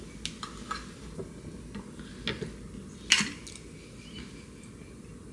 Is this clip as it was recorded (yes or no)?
yes